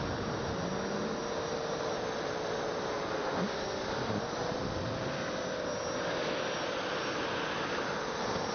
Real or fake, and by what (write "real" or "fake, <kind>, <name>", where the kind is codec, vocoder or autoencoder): real